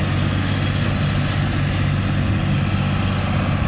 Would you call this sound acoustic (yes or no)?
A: yes